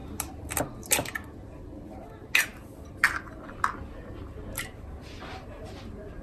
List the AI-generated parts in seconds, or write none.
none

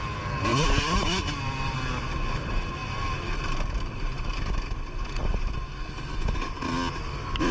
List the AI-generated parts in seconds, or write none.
none

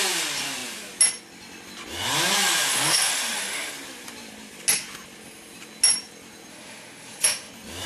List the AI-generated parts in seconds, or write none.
2.7-3.7; 6.5-7.5

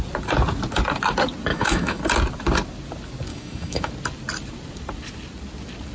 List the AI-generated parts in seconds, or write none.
1.5-2.0; 3.3-3.9

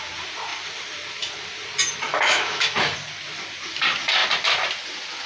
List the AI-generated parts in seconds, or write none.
2.1-2.9

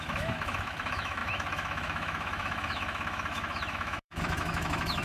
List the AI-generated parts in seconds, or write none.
0.0-5.0